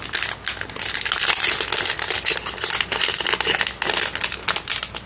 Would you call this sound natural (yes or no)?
yes